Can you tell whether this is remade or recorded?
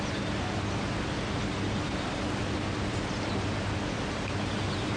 recorded